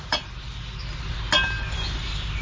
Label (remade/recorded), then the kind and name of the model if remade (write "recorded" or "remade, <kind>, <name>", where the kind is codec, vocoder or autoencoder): recorded